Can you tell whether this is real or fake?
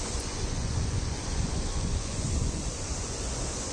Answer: fake